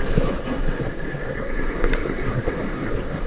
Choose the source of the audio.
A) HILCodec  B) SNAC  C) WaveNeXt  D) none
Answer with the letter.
B